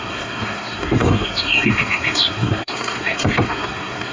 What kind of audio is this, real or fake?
fake